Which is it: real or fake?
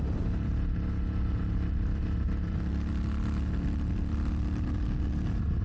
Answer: real